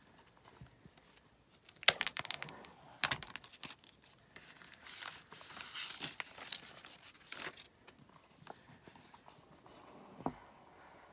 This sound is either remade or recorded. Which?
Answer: recorded